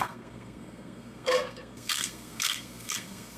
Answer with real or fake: fake